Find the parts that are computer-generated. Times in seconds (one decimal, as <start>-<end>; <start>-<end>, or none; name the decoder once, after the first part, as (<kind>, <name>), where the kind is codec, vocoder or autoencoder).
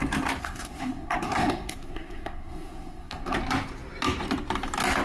0.4-3.4 (codec, SNAC)